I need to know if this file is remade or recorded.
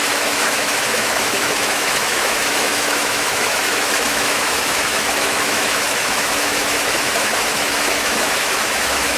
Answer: remade